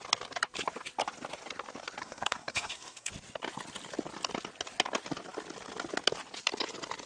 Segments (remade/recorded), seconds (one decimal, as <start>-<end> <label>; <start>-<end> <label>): 0.0-2.0 recorded; 2.0-3.1 remade; 3.1-7.1 recorded